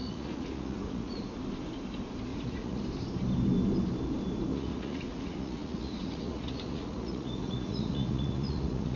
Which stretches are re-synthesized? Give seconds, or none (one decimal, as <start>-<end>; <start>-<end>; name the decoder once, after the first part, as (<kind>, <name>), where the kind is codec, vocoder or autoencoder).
0.0-1.3 (vocoder, Vocos); 2.3-2.8; 4.5-9.0